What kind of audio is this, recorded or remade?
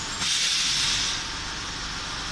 recorded